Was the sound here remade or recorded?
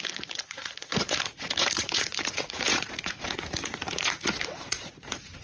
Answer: remade